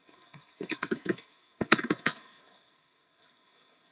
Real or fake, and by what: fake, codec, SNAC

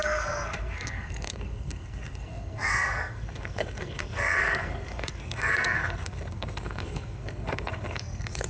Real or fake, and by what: fake, codec, SNAC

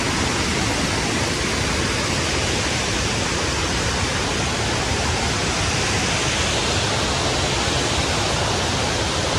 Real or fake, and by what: real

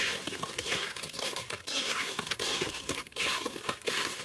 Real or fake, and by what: fake, codec, SNAC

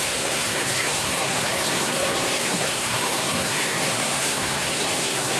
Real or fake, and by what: fake, codec, SNAC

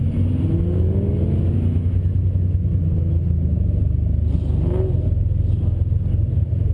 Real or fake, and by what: real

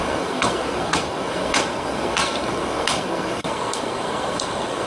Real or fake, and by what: fake, codec, SNAC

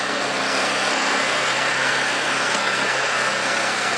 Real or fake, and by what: fake, codec, SNAC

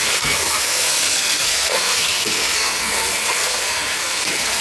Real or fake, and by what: fake, codec, SNAC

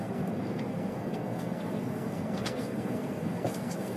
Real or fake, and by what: fake, codec, SNAC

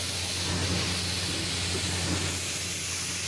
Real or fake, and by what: real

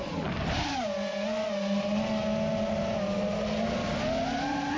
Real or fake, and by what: real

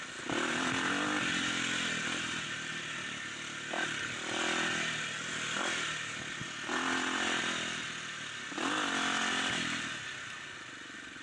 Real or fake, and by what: real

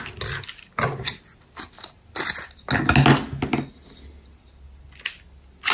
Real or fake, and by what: real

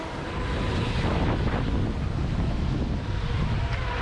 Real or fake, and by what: real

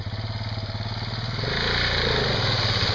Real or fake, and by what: real